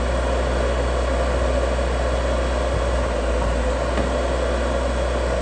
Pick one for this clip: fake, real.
real